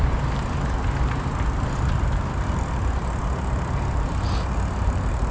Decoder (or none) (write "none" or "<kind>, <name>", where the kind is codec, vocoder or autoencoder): none